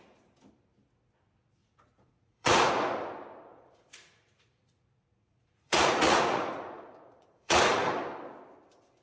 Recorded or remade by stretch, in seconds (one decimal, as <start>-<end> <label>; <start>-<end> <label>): 0.0-1.6 recorded; 1.6-2.7 remade; 2.7-3.5 recorded; 3.5-7.9 remade; 7.9-9.0 recorded